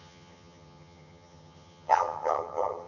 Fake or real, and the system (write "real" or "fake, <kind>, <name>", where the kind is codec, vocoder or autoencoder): fake, vocoder, HiFi-GAN